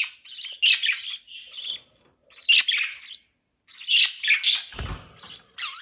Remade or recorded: recorded